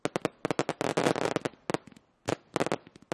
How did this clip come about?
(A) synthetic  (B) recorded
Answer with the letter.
B